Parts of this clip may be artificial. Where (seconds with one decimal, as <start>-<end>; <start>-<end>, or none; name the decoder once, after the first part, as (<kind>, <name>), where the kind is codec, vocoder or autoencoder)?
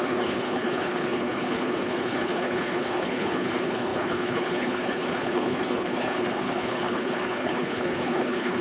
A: 0.0-8.6 (codec, HILCodec)